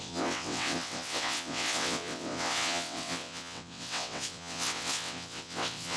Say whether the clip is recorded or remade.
remade